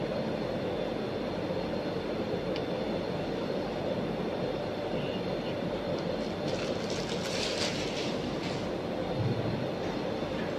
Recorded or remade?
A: recorded